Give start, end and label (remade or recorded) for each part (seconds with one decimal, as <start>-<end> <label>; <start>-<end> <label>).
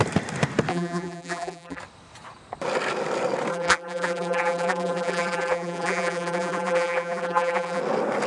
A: 0.0-0.7 recorded; 0.7-1.8 remade; 1.8-3.5 recorded; 3.5-7.8 remade; 7.8-8.3 recorded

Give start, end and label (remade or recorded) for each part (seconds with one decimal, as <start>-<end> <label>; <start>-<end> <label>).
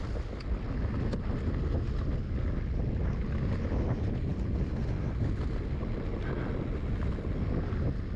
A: 0.0-8.2 recorded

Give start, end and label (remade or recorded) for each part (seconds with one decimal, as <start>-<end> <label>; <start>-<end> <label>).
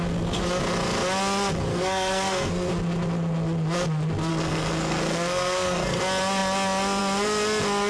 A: 0.0-1.7 recorded; 1.7-2.7 remade; 2.7-4.3 recorded; 4.3-6.0 remade; 6.0-7.9 recorded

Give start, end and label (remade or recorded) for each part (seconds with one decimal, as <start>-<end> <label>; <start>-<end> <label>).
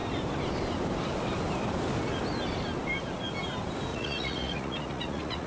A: 0.0-3.9 recorded; 3.9-5.5 remade